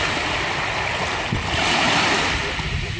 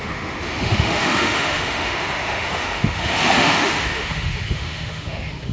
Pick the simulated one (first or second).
second